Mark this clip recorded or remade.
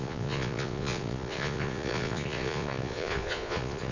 remade